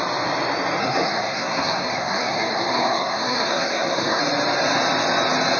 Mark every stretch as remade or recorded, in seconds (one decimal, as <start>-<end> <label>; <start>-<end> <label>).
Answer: 0.0-0.8 recorded; 0.8-4.2 remade; 4.2-5.6 recorded